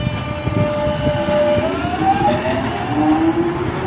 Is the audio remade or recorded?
recorded